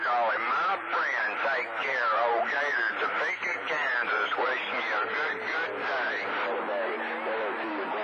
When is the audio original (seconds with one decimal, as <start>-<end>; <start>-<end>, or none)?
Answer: 0.0-0.7; 1.2-1.8; 3.0-3.5; 5.6-8.0